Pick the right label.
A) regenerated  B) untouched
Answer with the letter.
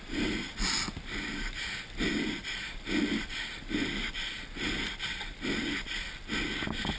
B